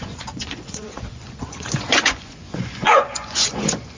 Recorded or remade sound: remade